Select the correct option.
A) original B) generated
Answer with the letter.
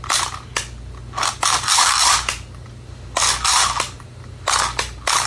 A